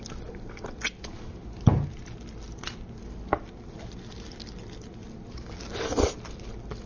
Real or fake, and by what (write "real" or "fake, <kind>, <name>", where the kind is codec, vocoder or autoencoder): real